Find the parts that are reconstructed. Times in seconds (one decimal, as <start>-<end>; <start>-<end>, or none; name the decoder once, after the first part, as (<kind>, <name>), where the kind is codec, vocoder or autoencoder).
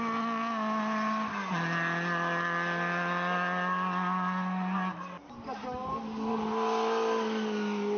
none